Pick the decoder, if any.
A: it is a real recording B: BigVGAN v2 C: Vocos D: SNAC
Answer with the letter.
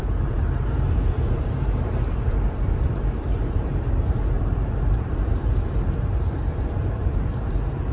B